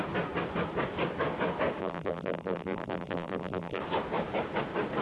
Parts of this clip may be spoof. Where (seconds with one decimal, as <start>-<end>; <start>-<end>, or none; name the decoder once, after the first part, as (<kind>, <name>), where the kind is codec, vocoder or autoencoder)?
1.8-3.8 (vocoder, BigVGAN v2)